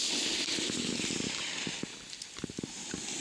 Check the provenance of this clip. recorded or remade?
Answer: recorded